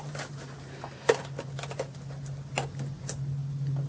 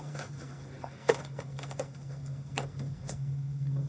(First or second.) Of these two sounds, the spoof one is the second